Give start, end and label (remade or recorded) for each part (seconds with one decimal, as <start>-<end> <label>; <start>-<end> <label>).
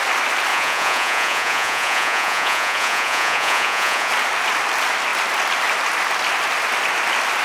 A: 0.0-0.5 recorded; 0.5-4.1 remade; 4.1-7.4 recorded